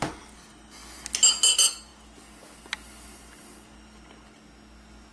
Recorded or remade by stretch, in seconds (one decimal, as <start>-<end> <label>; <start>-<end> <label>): 0.0-5.1 recorded